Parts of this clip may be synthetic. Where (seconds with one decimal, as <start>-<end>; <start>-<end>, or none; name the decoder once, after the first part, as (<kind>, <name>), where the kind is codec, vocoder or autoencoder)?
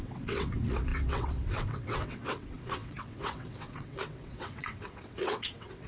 0.0-5.9 (vocoder, WaveNeXt)